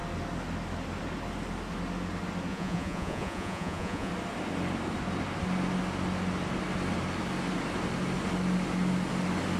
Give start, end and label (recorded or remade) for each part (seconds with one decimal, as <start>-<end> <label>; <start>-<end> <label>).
0.0-2.5 recorded; 2.5-4.1 remade; 4.1-9.6 recorded